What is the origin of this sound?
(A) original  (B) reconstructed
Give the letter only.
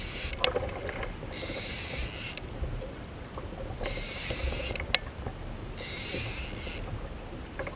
A